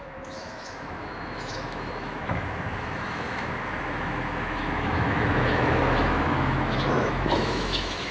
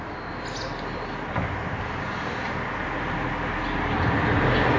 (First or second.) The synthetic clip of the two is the first